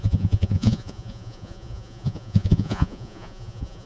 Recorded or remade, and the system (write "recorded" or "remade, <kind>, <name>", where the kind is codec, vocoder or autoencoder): remade, vocoder, Vocos